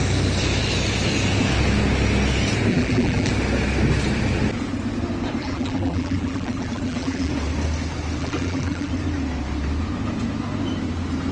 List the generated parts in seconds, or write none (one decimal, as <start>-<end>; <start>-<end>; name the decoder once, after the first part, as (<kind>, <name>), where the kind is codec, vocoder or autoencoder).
2.7-3.3 (vocoder, BigVGAN v2); 5.4-7.3; 8.2-8.9